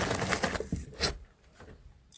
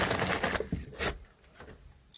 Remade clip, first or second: first